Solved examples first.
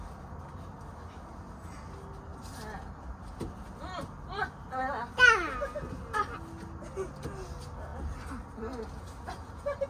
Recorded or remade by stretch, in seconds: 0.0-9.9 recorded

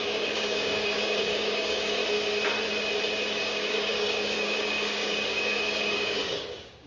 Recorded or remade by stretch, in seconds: 0.0-2.0 remade; 2.0-3.4 recorded; 3.4-6.9 remade

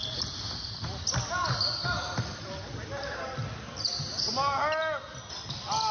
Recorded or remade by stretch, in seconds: 0.0-5.9 recorded

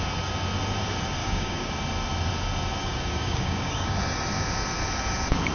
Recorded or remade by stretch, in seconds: 0.0-1.2 recorded; 1.2-1.7 remade; 1.7-2.8 recorded; 2.8-4.0 remade; 4.0-5.5 recorded

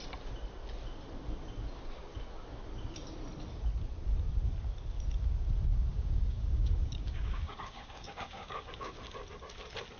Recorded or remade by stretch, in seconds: 0.0-5.9 recorded; 5.9-9.0 remade; 9.0-10.0 recorded

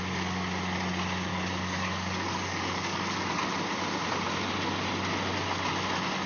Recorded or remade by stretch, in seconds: 0.0-1.3 recorded; 1.3-3.4 remade; 3.4-6.3 recorded

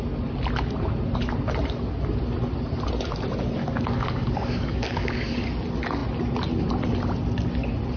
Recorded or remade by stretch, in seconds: 0.0-3.6 recorded; 3.6-5.5 remade; 5.5-8.0 recorded